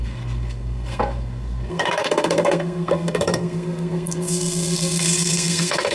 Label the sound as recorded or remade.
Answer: remade